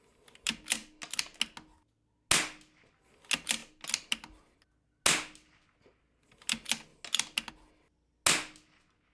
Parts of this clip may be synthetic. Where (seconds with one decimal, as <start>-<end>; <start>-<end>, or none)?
none